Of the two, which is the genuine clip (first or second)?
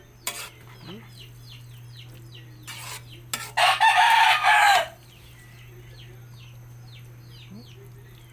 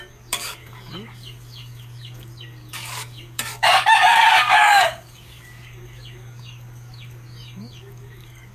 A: first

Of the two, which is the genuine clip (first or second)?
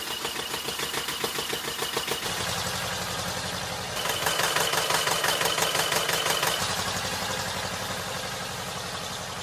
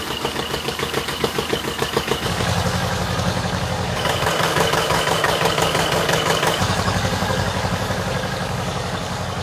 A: first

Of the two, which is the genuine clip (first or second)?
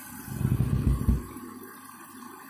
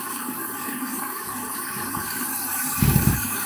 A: first